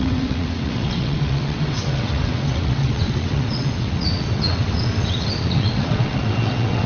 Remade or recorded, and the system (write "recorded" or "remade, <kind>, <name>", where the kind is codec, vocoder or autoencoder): remade, vocoder, WaveNeXt